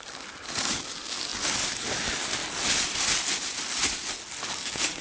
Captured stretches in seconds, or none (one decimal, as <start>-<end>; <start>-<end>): 2.4-4.4